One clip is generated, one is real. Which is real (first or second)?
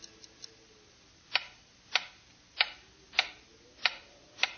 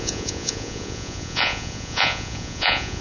first